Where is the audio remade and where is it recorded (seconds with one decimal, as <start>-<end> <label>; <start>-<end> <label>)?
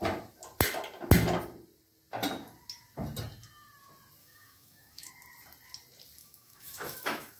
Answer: 0.0-4.2 recorded; 4.2-5.1 remade; 5.1-6.2 recorded; 6.2-7.4 remade